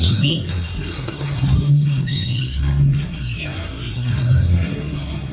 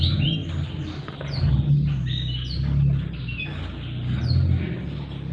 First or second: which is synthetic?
first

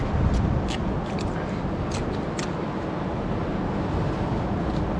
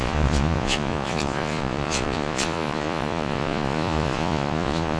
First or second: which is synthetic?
second